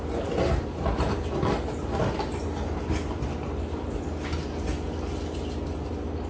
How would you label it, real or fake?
real